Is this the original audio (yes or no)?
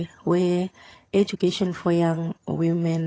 no